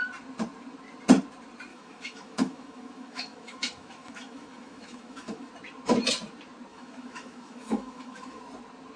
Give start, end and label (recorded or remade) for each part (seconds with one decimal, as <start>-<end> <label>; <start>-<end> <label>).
0.0-1.7 recorded; 1.7-5.5 remade; 5.5-6.7 recorded; 6.7-8.4 remade; 8.4-9.0 recorded